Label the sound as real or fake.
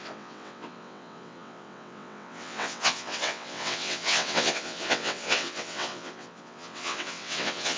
fake